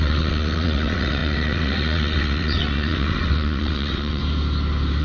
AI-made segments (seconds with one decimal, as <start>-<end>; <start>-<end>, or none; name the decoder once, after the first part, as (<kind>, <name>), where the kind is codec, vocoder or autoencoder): 0.0-4.2 (vocoder, WaveNeXt)